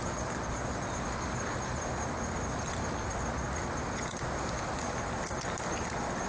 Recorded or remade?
recorded